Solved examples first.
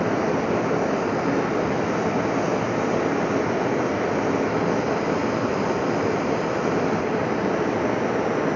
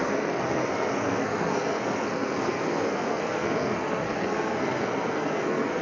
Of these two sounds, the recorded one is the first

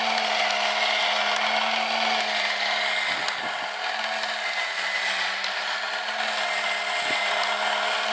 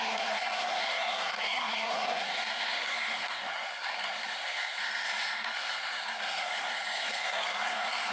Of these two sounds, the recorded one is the first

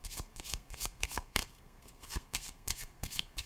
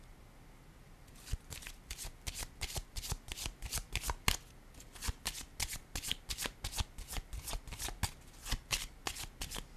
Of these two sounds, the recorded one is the second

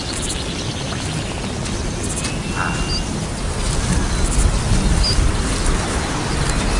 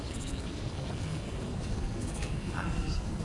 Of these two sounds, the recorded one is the first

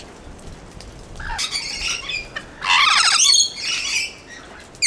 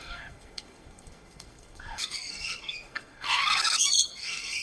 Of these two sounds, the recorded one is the first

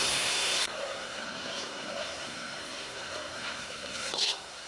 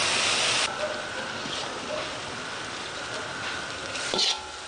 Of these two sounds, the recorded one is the second